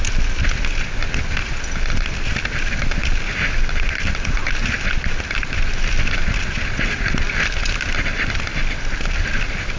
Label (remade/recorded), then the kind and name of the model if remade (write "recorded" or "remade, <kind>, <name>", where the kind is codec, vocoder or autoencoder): recorded